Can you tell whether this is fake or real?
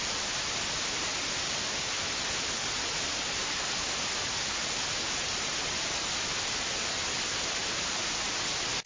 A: real